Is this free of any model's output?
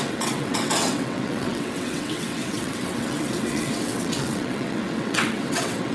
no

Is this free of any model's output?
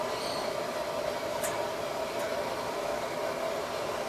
yes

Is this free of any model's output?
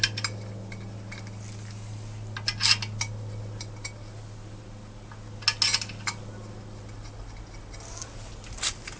yes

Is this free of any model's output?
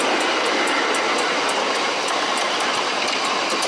yes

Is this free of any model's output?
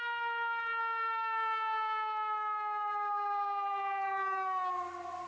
yes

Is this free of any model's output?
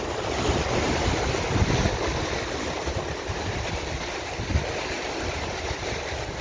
yes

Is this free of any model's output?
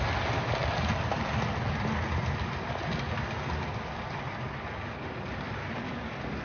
yes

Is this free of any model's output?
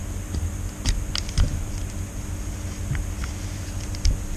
yes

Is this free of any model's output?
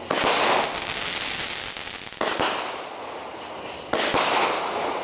yes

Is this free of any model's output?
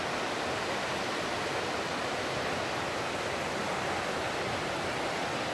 yes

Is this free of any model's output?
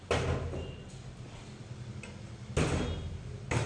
yes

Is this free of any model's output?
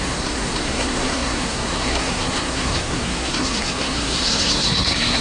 no